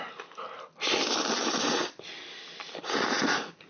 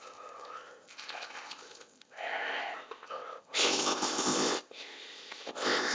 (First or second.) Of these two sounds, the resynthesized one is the second